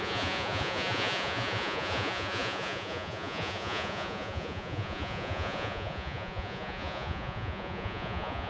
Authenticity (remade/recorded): remade